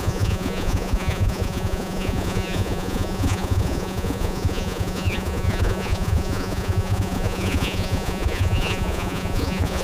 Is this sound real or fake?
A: fake